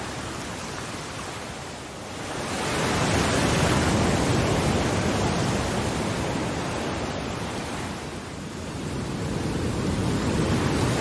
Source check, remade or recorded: recorded